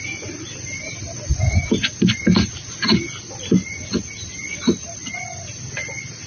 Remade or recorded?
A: recorded